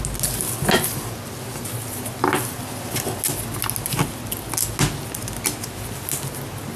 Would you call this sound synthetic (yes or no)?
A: no